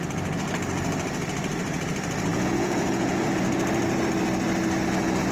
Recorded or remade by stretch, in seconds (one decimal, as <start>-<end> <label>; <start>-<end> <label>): 0.0-2.3 recorded; 2.3-3.4 remade; 3.4-5.3 recorded